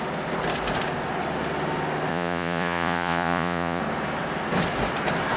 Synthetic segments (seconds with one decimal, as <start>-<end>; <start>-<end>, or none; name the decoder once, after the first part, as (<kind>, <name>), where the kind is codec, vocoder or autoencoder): 2.1-3.8 (vocoder, Vocos)